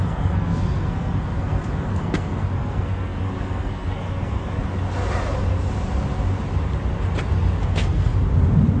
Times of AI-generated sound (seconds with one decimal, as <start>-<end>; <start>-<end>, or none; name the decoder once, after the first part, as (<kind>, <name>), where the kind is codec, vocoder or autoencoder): 0.0-4.6 (codec, SNAC); 7.6-8.1